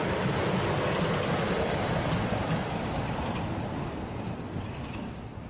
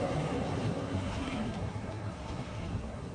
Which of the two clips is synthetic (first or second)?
second